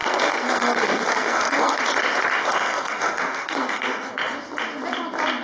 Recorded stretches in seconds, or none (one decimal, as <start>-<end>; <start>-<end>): 1.8-2.4; 4.1-5.4